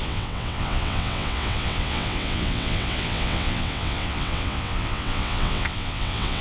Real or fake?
fake